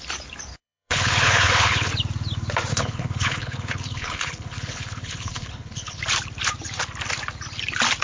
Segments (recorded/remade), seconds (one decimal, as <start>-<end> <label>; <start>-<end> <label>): 0.0-0.5 recorded; 0.5-1.9 remade; 1.9-2.7 recorded; 2.7-6.0 remade; 6.0-8.0 recorded